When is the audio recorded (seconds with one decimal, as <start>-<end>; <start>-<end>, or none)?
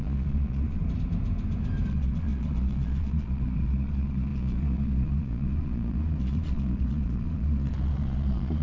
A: 0.8-1.9